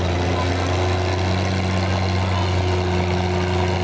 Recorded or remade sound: recorded